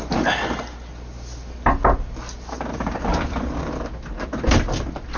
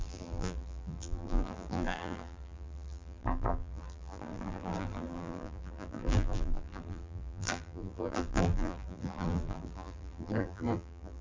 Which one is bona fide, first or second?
first